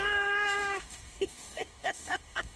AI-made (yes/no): yes